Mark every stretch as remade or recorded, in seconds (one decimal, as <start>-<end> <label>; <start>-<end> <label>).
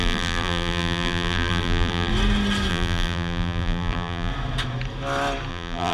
0.0-2.1 remade; 2.1-2.7 recorded; 2.7-4.3 remade; 4.3-5.5 recorded; 5.5-5.9 remade